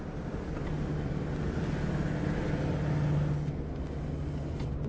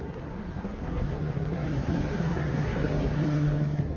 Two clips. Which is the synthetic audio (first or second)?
second